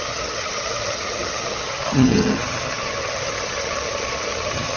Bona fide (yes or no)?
no